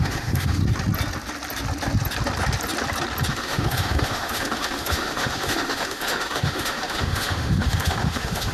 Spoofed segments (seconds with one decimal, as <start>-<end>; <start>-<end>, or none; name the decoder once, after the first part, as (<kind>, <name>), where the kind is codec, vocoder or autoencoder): 0.0-0.6 (autoencoder, DAC-VAE); 3.3-8.5